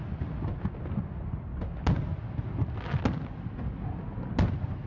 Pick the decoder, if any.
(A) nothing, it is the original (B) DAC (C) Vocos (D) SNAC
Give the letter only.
A